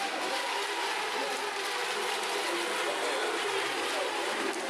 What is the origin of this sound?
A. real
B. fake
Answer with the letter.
A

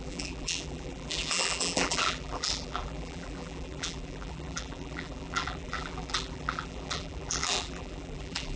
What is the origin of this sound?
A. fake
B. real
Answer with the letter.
A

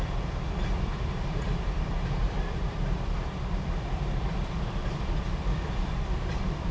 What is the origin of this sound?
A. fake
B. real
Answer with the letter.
A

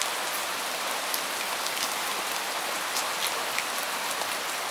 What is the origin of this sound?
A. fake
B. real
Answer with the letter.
B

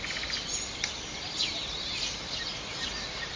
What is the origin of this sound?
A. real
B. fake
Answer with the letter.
A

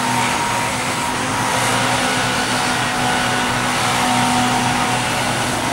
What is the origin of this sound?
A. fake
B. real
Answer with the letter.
B